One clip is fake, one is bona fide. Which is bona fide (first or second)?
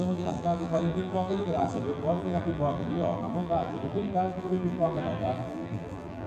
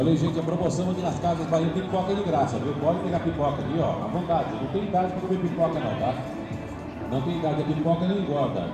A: second